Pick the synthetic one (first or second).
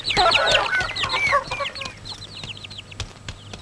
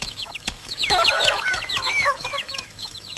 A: second